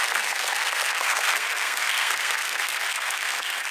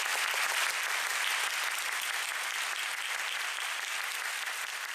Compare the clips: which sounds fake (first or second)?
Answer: first